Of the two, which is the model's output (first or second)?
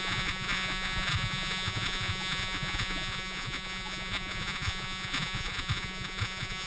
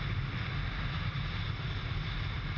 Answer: first